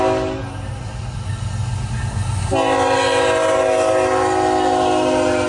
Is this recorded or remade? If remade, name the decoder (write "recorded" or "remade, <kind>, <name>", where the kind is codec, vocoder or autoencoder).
recorded